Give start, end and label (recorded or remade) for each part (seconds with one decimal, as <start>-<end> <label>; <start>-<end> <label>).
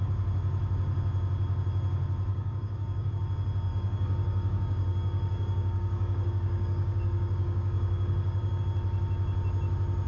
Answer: 0.0-2.3 recorded; 2.3-3.2 remade; 3.2-3.7 recorded; 3.7-8.6 remade; 8.6-10.1 recorded